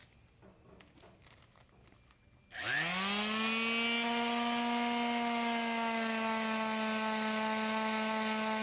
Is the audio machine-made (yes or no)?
no